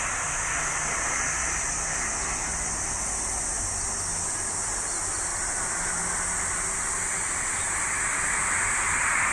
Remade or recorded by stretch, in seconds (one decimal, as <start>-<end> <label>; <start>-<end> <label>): 0.0-9.3 recorded